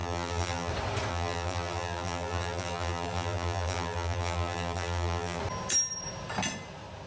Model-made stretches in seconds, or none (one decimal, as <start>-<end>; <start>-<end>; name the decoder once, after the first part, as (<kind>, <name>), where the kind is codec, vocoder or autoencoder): 0.0-0.7 (vocoder, BigVGAN v2); 1.1-5.4